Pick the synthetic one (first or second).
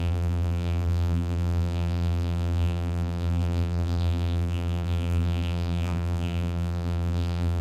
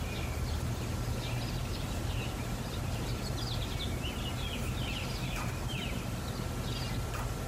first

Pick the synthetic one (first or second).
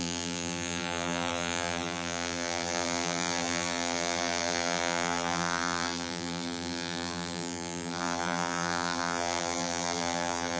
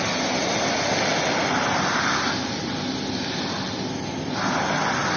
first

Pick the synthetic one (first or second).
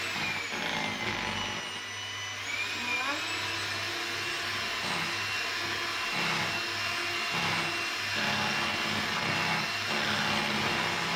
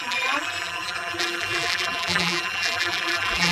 second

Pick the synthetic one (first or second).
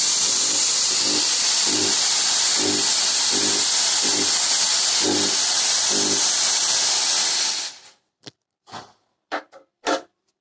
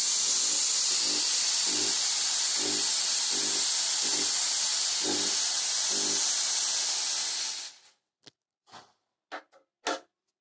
first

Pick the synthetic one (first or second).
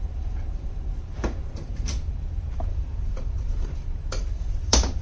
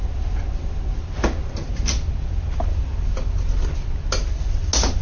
first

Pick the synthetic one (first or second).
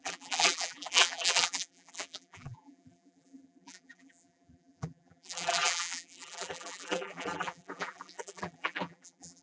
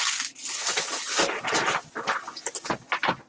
first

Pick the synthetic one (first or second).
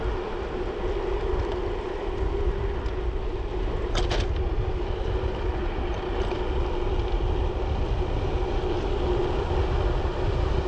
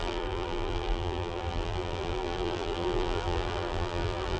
second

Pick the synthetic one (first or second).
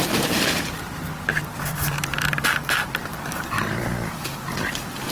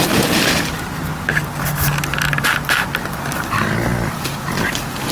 first